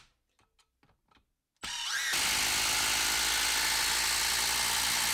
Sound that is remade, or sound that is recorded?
recorded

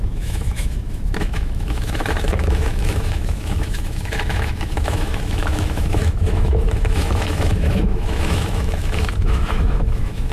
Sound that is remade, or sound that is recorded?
remade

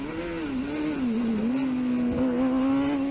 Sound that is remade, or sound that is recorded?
recorded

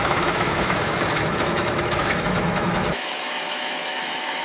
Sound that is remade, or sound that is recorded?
remade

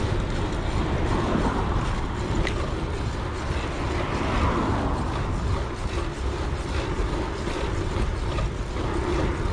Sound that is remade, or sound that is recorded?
recorded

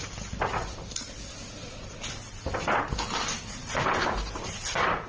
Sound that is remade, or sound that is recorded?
recorded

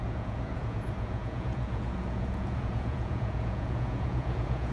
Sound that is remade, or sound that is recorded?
remade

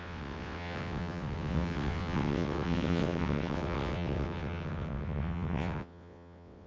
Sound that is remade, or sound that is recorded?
remade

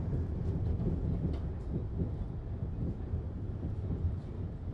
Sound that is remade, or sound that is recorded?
recorded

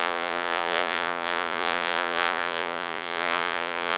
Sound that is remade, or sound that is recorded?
remade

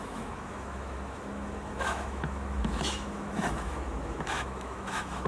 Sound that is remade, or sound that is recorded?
remade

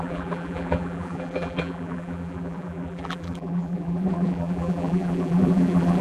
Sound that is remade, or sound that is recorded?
remade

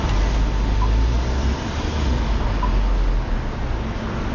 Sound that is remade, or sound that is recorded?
recorded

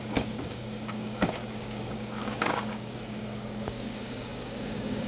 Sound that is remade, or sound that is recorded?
remade